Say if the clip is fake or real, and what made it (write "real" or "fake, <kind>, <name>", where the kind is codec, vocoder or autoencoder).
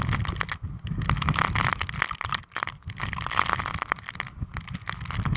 real